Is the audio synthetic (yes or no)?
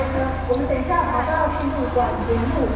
no